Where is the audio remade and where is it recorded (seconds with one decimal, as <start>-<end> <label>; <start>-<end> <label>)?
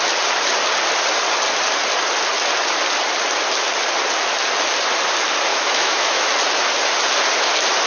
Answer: 0.0-5.5 recorded; 5.5-6.3 remade; 6.3-7.9 recorded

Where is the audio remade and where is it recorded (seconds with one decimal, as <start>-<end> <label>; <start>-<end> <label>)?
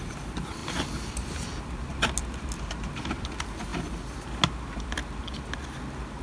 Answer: 0.0-6.2 recorded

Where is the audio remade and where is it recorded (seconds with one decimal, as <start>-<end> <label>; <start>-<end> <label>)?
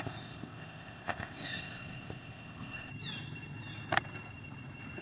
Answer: 0.0-2.9 remade; 2.9-5.0 recorded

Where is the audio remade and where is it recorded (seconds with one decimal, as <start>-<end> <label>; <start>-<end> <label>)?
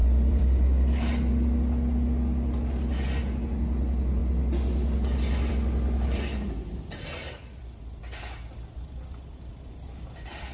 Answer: 0.0-1.3 remade; 1.3-10.5 recorded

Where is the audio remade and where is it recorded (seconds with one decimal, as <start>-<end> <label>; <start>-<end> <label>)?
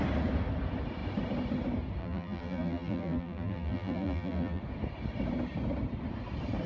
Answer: 0.0-2.0 recorded; 2.0-4.6 remade; 4.6-6.7 recorded